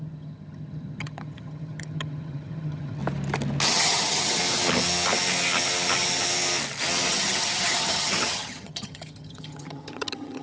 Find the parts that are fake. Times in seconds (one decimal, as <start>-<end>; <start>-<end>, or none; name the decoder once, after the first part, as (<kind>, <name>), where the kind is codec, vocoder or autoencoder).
0.0-3.0 (vocoder, HiFi-GAN); 3.7-4.4; 7.1-10.4